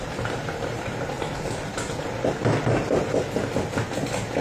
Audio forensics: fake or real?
real